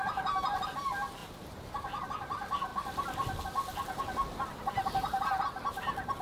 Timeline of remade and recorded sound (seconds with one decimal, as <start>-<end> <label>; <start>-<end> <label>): 0.0-1.2 recorded; 1.2-2.0 remade; 2.0-2.7 recorded; 2.7-3.4 remade; 3.4-6.2 recorded